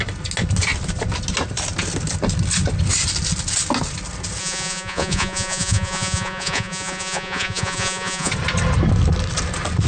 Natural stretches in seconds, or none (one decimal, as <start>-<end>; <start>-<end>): 0.0-4.4; 8.3-9.9